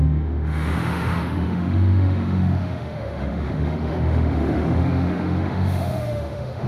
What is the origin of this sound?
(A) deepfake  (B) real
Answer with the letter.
A